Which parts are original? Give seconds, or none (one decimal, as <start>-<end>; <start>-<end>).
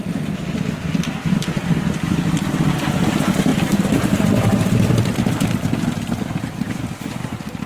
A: 0.0-3.5; 4.2-7.7